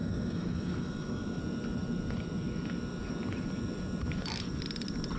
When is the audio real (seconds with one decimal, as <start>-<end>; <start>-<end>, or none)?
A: 1.4-5.2